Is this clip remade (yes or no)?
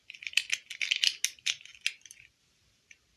no